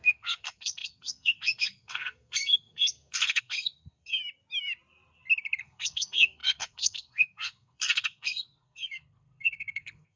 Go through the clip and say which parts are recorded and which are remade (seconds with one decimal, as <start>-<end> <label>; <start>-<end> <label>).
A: 0.0-4.2 remade; 4.2-5.6 recorded; 5.6-10.2 remade